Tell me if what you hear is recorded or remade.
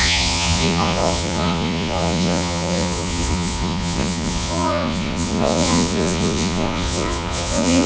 remade